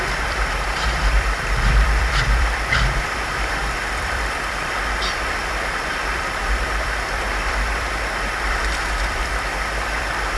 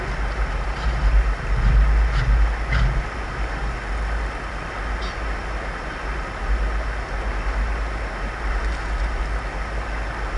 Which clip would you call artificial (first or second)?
first